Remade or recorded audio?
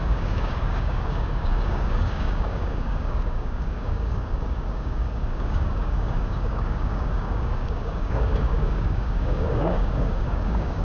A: remade